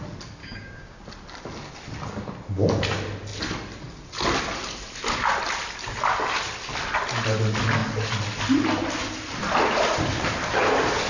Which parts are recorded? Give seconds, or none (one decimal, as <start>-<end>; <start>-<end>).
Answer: 0.0-0.4; 1.0-11.1